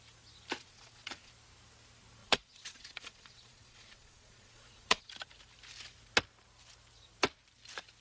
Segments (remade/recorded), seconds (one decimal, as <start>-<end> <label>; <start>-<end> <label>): 0.0-0.6 recorded; 0.6-1.3 remade; 1.3-2.2 recorded; 2.2-5.1 remade; 5.1-8.0 recorded